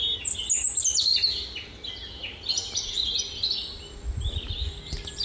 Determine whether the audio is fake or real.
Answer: real